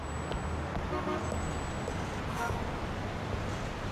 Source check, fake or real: real